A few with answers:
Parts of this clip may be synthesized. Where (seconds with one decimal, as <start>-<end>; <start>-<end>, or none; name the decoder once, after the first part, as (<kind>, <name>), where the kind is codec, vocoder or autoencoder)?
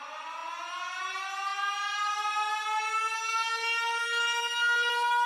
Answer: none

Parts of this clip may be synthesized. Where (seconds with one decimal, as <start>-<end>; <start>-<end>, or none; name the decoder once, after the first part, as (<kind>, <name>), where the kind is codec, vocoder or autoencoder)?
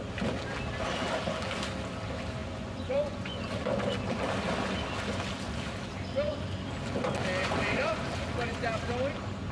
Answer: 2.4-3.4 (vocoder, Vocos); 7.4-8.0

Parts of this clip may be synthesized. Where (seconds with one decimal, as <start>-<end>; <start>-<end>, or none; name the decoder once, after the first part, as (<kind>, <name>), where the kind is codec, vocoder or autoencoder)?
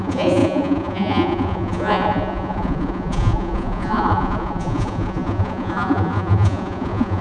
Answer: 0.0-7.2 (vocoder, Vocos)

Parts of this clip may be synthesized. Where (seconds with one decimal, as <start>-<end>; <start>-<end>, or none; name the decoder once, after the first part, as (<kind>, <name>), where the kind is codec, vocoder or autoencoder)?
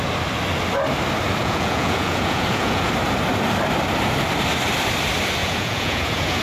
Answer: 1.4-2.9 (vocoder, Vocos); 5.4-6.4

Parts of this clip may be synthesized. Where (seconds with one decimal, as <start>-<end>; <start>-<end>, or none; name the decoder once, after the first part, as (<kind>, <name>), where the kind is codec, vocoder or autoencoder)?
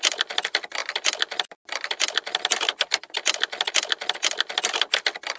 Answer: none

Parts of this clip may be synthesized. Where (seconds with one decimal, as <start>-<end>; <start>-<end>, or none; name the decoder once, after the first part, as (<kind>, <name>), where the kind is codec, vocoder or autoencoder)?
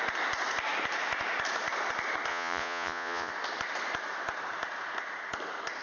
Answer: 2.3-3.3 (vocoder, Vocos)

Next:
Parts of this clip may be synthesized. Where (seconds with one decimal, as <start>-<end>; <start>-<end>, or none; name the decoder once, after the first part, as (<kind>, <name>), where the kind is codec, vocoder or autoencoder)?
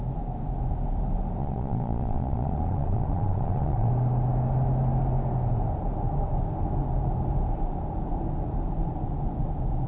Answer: 1.4-3.9 (vocoder, Vocos)